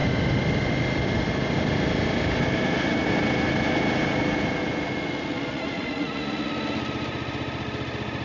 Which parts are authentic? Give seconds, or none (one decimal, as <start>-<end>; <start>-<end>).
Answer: 0.0-5.5; 6.5-8.2